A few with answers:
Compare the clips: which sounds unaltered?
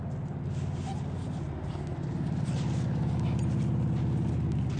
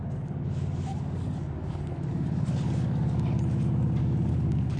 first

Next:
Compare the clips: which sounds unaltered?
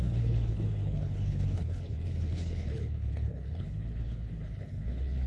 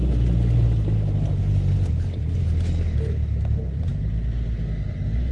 second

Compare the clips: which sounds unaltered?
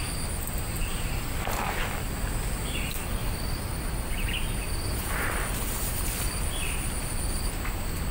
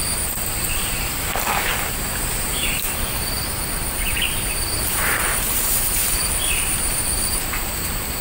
first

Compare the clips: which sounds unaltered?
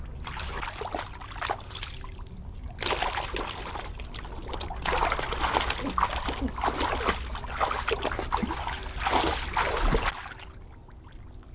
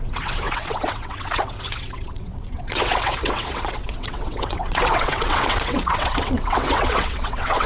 first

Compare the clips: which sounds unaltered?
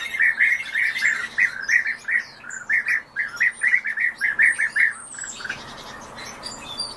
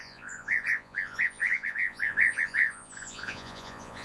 first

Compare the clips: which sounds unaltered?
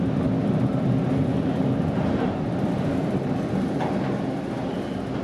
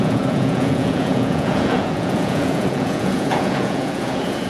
first